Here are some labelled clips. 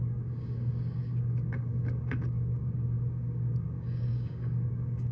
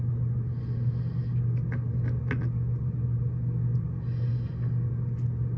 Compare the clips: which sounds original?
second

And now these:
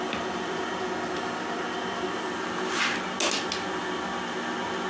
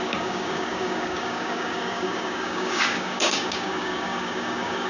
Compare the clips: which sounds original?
first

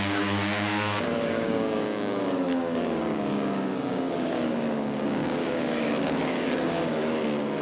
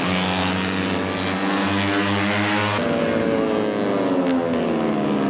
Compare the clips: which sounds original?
second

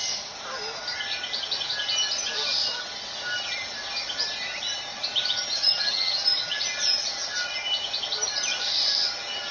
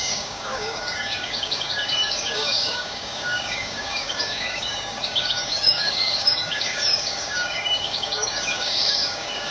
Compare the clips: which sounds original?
first